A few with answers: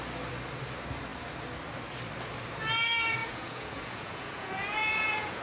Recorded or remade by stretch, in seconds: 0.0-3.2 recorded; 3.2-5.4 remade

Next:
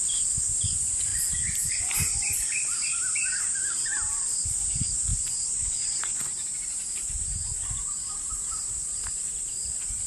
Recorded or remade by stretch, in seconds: 0.0-1.1 remade; 1.1-1.7 recorded; 1.7-10.1 remade

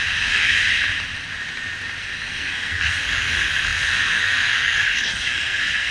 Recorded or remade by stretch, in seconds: 0.0-0.6 remade; 0.6-2.0 recorded; 2.0-5.9 remade

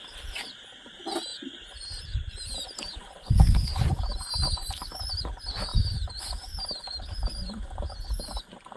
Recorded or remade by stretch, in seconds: 0.0-3.2 recorded; 3.2-3.7 remade; 3.7-8.8 recorded